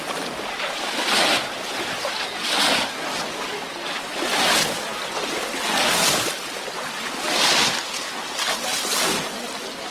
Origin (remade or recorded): recorded